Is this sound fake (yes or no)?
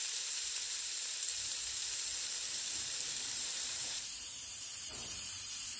yes